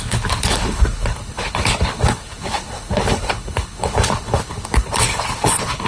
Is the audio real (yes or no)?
no